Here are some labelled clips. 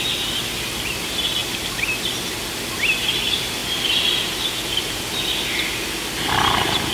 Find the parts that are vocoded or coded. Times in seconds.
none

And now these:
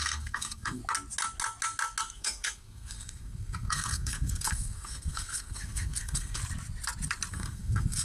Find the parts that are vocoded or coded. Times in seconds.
0.0-0.8 (codec, SNAC); 2.0-6.4; 7.3-8.0

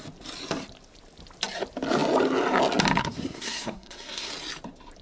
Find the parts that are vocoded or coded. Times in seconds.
3.0-4.3 (codec, SNAC)

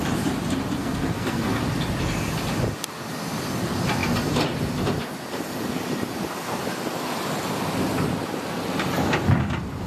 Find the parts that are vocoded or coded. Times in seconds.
0.8-1.6 (codec, SNAC)

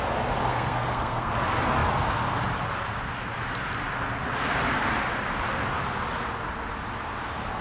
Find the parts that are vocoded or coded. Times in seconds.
0.4-1.3 (codec, SNAC)

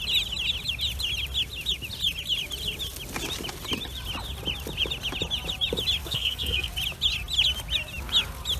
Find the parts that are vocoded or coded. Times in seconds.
6.0-6.7 (codec, SNAC)

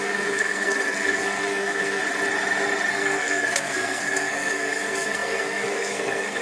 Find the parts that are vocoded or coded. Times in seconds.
0.0-2.0 (codec, SNAC); 2.9-6.4